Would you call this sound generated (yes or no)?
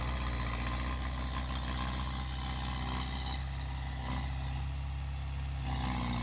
no